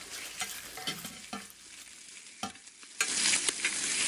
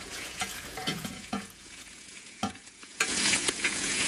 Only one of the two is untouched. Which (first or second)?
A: first